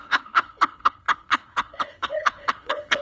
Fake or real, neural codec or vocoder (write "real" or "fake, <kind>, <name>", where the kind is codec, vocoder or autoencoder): fake, codec, HILCodec